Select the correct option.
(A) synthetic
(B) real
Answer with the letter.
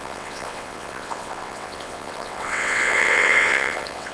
A